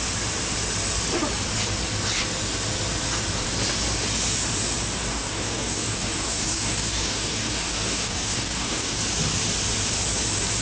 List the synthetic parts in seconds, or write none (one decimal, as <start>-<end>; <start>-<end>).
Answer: 5.1-9.0